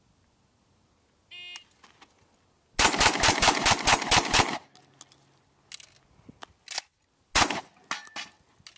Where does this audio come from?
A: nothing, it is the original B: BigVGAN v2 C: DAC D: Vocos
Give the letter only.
A